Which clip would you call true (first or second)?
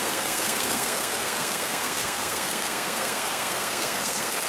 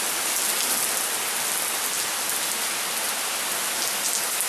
second